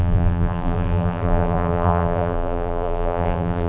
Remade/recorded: remade